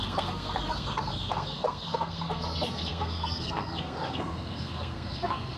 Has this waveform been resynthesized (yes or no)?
yes